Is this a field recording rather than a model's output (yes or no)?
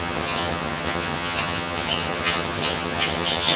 no